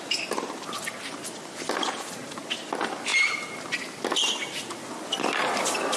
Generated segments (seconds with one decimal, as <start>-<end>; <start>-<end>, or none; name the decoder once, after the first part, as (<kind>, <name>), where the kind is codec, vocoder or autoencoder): none